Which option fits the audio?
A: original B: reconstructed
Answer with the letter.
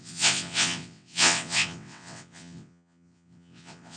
B